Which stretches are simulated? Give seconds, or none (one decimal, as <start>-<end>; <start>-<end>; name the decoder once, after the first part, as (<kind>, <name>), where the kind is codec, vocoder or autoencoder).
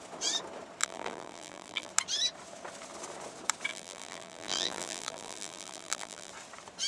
0.8-1.9 (vocoder, BigVGAN v2); 3.7-6.3